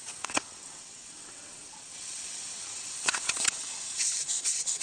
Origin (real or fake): fake